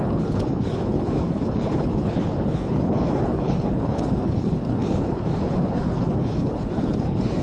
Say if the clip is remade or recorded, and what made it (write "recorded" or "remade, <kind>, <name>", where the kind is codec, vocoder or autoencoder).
remade, codec, HILCodec